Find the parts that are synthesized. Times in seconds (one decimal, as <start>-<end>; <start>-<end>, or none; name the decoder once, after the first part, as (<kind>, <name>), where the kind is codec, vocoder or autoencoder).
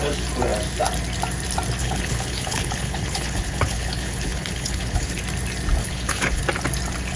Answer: 1.8-5.2 (codec, HILCodec); 5.8-6.4